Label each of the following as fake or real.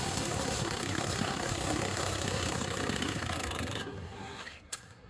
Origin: fake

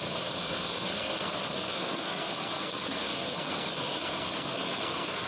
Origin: fake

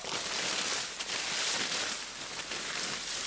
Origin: real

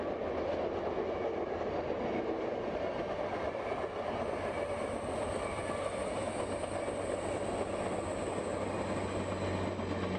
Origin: real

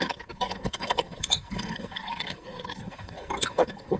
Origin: fake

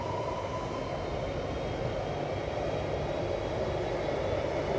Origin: real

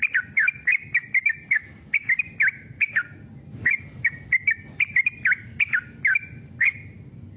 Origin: real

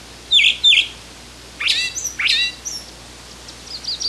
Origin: real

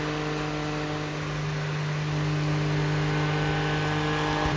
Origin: real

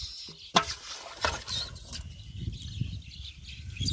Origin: real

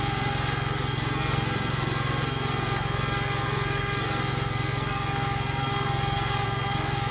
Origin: fake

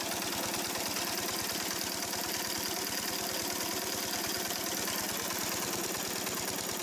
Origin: real